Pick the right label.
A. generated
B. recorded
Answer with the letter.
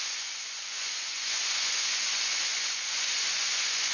A